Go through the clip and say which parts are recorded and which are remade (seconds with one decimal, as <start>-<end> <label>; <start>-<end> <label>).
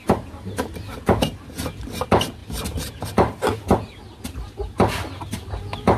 0.0-6.0 recorded